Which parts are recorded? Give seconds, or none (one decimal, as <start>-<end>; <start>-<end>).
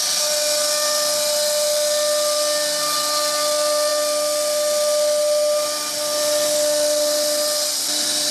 0.0-8.3